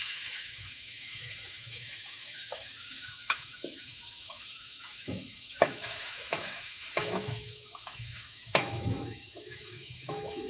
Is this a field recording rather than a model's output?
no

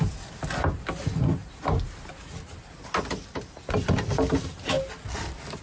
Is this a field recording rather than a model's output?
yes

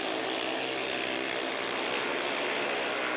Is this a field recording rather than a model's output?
yes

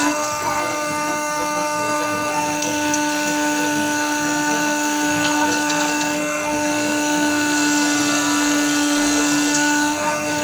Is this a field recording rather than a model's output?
no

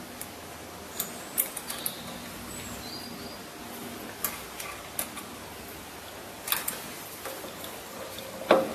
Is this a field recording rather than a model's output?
yes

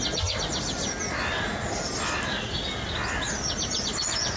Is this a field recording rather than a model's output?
yes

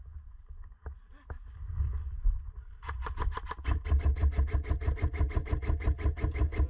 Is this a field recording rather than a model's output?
yes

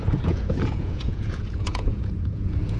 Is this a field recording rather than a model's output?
no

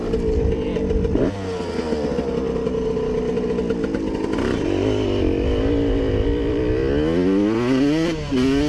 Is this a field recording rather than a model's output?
yes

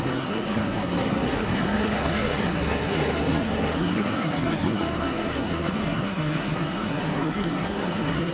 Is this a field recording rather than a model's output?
no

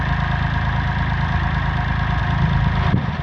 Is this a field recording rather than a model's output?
yes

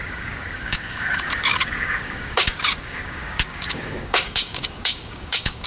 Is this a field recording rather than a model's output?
no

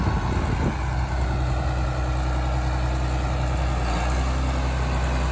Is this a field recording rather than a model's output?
yes